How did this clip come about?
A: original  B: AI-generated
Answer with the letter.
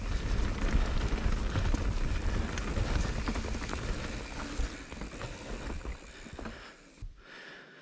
A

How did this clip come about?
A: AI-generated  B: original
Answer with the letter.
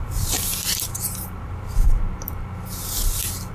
A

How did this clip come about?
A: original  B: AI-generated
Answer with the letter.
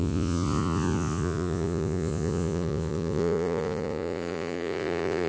B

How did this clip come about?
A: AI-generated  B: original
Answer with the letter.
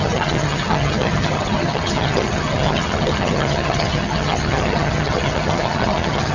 A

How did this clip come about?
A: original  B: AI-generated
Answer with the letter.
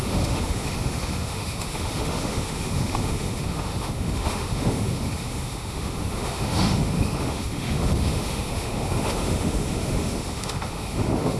B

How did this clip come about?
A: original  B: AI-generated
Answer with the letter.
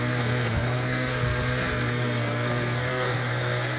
B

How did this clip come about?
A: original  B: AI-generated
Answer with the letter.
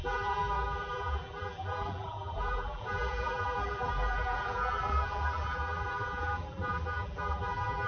B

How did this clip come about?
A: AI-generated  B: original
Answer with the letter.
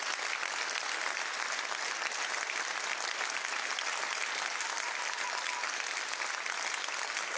B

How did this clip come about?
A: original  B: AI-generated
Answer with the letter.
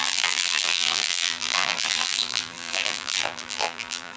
B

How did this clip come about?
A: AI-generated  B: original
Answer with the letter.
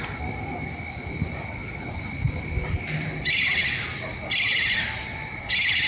B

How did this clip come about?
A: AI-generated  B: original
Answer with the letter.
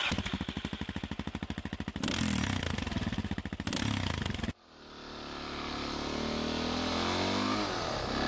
B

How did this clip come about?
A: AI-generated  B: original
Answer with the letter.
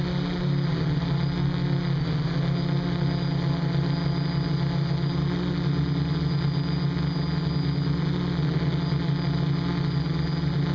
B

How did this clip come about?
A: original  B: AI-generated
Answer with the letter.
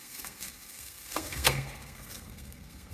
B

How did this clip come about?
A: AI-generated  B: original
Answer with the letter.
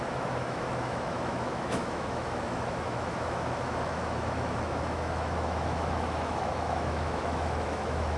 A